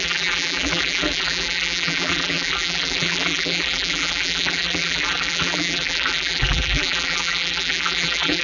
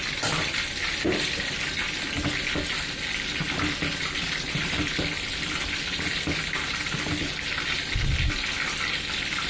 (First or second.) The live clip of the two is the second